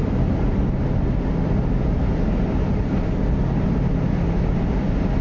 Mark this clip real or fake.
real